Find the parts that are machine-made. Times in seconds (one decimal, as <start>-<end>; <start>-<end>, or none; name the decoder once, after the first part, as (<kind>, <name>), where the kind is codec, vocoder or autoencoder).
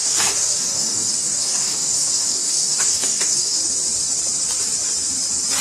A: 0.0-3.6 (codec, DAC)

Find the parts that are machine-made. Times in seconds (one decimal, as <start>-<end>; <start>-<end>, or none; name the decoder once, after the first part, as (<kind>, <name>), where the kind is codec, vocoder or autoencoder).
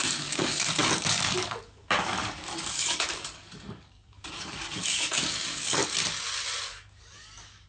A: 0.0-5.8 (codec, DAC); 6.7-7.7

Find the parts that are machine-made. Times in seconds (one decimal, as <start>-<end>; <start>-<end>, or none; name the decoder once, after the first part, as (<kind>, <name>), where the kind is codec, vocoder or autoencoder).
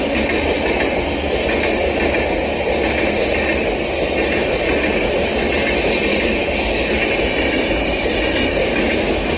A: 6.1-6.9 (codec, DAC); 8.5-9.4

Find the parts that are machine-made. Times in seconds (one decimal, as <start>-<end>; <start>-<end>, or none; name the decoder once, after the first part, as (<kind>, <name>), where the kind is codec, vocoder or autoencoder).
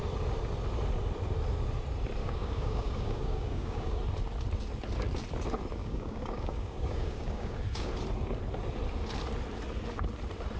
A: 2.2-4.0 (codec, DAC); 5.8-7.9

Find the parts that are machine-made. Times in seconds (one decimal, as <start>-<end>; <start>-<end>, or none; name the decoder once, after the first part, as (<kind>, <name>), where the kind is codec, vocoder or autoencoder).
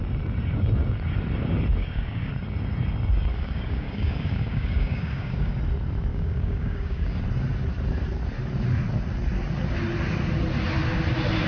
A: 1.8-2.3 (codec, DAC); 3.3-5.5; 6.1-7.2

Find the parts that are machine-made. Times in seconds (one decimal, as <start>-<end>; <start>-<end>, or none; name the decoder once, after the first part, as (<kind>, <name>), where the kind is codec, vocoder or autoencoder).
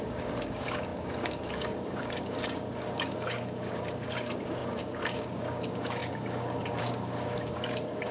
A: 0.0-8.1 (codec, DAC)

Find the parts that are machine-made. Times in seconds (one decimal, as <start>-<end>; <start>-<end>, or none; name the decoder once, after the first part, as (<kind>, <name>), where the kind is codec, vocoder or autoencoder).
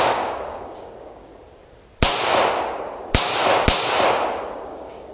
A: 0.0-1.3 (codec, DAC); 4.4-5.1